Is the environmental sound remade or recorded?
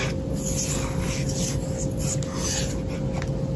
recorded